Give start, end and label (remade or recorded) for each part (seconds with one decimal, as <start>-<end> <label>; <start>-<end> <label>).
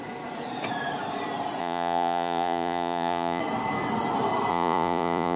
0.0-1.6 recorded; 1.6-3.4 remade; 3.4-4.5 recorded; 4.5-5.4 remade